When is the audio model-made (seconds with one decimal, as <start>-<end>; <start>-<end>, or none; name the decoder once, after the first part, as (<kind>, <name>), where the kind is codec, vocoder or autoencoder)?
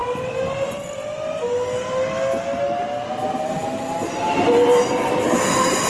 none